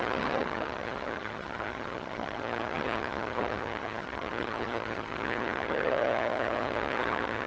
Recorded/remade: remade